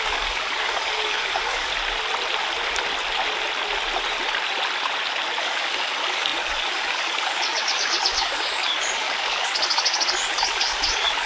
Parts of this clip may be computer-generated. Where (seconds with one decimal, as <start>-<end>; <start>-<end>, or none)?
0.0-1.7; 5.4-11.3